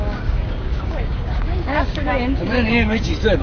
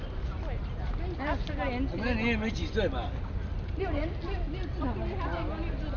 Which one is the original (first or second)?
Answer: second